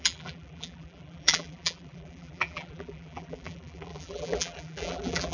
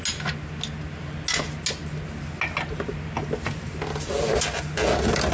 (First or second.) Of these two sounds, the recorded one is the second